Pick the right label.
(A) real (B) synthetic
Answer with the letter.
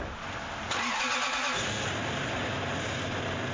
A